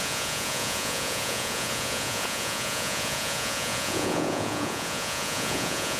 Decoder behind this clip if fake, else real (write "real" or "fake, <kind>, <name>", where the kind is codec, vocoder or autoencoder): fake, vocoder, Vocos